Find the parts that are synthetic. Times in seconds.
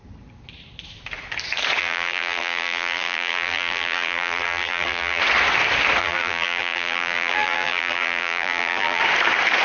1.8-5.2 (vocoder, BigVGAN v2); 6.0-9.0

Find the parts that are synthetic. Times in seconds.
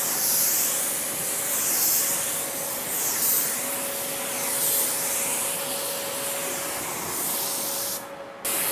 6.4-7.6 (vocoder, BigVGAN v2)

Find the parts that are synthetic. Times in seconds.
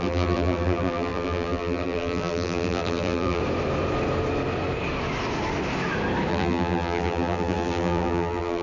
0.0-3.4 (vocoder, BigVGAN v2); 6.3-8.6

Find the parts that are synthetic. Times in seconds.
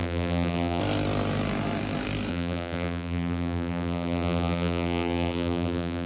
0.0-0.8 (vocoder, BigVGAN v2); 2.3-6.1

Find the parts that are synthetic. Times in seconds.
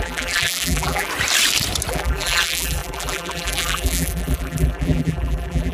0.0-1.1 (vocoder, BigVGAN v2); 1.9-5.7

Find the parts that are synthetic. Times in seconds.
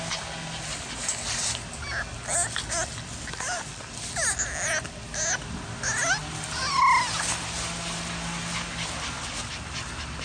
none